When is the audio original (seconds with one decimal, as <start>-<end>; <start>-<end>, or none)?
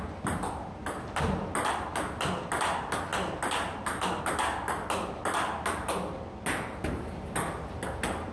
0.0-8.3